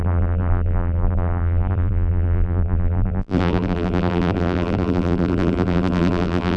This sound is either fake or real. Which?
fake